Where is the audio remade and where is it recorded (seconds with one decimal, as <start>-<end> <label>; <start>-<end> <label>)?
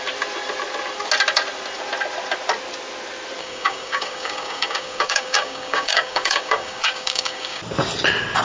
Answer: 0.0-3.4 recorded; 3.4-7.6 remade; 7.6-8.4 recorded